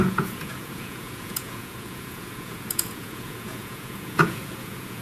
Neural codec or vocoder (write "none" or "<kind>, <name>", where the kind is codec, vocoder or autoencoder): vocoder, Vocos